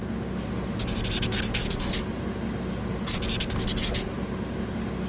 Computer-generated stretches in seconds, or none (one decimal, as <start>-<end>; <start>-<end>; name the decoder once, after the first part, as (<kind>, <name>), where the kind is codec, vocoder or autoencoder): none

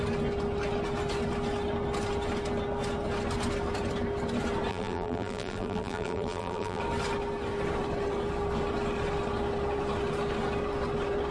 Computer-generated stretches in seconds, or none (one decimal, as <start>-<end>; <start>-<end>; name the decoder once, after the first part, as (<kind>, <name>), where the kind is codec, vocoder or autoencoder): 4.7-6.8 (vocoder, BigVGAN v2)